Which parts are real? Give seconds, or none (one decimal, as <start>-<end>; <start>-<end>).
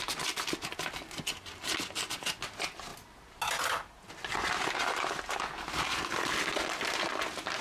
0.0-7.6